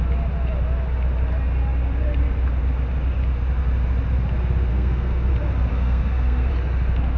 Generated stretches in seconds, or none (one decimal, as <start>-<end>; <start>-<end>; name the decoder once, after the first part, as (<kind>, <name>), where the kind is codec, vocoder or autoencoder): 4.7-5.3 (codec, SNAC); 5.7-6.5